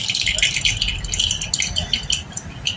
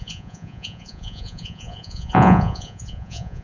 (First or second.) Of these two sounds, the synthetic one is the second